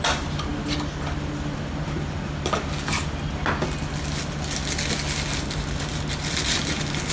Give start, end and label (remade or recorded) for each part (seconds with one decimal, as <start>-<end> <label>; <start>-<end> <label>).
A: 0.0-7.1 recorded